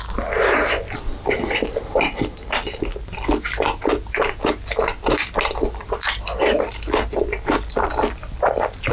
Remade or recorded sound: recorded